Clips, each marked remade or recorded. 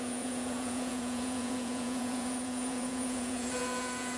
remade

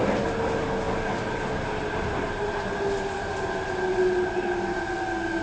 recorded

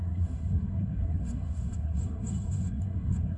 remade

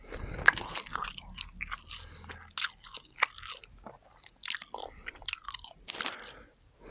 recorded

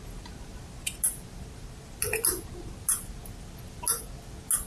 recorded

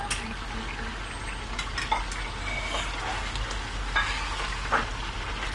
recorded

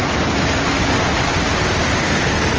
recorded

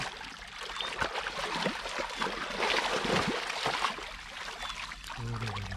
recorded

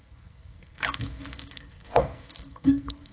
remade